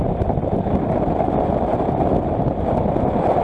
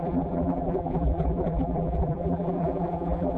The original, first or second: first